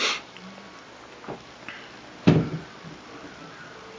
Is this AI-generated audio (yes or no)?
no